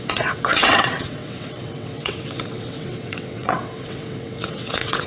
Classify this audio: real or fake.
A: fake